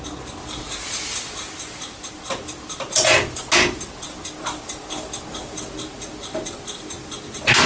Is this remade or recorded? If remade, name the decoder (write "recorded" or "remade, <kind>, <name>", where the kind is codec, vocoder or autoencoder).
recorded